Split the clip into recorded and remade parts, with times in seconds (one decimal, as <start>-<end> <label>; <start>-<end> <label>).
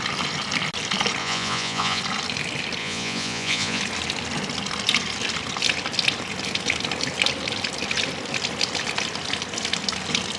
0.0-1.2 recorded; 1.2-2.0 remade; 2.0-2.8 recorded; 2.8-3.8 remade; 3.8-10.4 recorded